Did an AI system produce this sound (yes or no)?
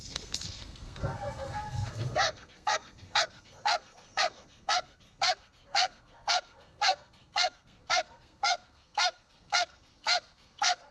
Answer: yes